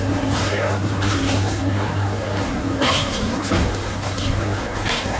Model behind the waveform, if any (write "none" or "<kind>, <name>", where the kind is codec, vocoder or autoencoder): codec, SNAC